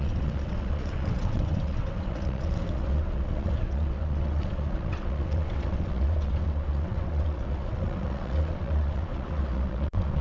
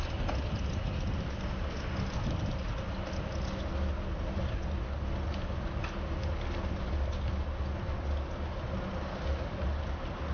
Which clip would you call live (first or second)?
second